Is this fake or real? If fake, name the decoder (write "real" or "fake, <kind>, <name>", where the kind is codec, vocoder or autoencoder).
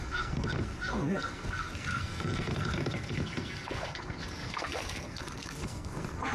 fake, codec, SNAC